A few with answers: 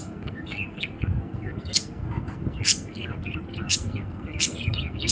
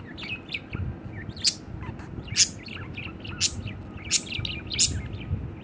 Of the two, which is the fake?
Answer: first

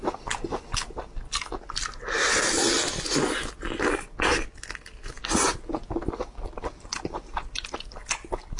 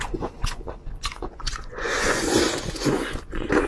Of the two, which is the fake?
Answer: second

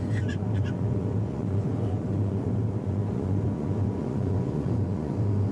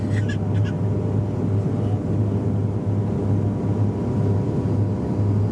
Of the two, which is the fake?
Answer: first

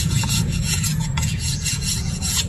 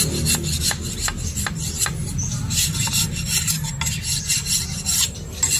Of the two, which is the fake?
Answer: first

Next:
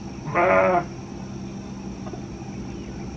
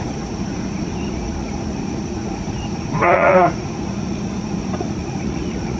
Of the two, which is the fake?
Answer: second